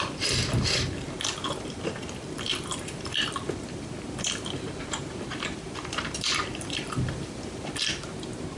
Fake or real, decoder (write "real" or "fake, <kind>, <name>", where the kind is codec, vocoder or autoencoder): fake, vocoder, BigVGAN v2